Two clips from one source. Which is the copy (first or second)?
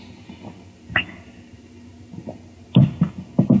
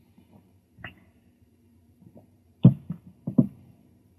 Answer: second